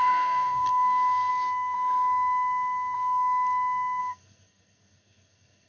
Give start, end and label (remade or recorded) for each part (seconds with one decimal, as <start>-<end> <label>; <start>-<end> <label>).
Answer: 0.0-1.3 remade; 1.3-4.0 recorded; 4.0-5.7 remade